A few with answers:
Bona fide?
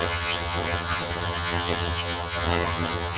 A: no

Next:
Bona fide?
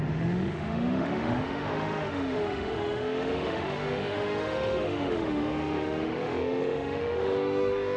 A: no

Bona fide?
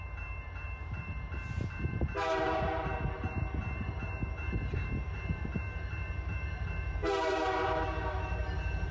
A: no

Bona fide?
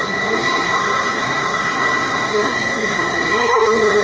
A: no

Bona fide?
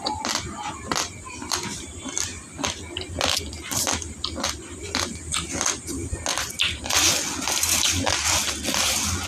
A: yes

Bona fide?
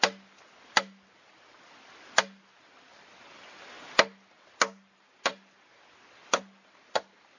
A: yes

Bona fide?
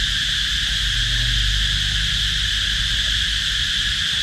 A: yes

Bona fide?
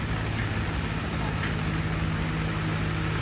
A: yes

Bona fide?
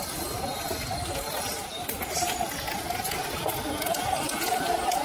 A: yes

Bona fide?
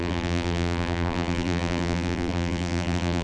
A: no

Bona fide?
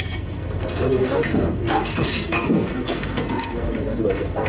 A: no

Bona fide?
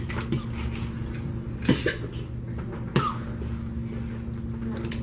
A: yes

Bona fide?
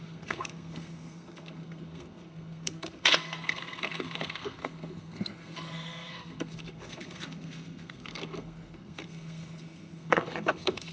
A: no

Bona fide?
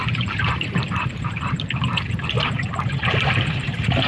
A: no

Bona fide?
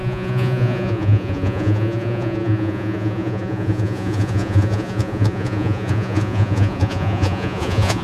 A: no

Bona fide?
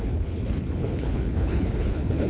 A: no